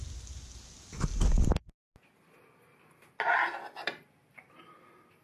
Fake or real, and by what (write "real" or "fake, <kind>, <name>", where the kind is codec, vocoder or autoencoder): real